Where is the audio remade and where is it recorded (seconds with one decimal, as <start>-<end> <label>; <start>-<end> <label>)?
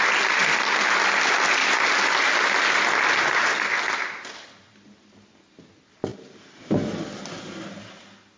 0.0-8.4 recorded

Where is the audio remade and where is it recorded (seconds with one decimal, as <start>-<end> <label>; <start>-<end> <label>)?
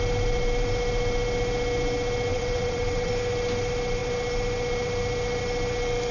0.0-2.3 recorded; 2.3-3.1 remade; 3.1-6.1 recorded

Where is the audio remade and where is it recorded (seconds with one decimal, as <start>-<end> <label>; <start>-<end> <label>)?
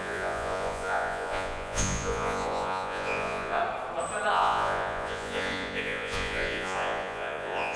0.0-3.6 remade; 3.6-4.3 recorded; 4.3-7.8 remade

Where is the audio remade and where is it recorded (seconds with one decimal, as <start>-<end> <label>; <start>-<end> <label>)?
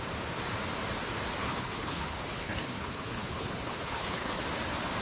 0.0-1.4 recorded; 1.4-4.4 remade; 4.4-5.0 recorded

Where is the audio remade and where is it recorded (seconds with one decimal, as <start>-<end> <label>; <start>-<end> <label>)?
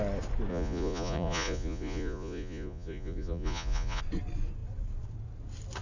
0.0-0.5 recorded; 0.5-4.0 remade; 4.0-5.8 recorded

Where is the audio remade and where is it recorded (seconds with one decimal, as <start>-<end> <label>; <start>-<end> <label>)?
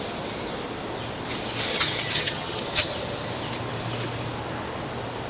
0.0-1.7 recorded; 1.7-2.9 remade; 2.9-5.3 recorded